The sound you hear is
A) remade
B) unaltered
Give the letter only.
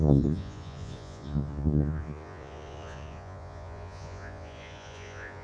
A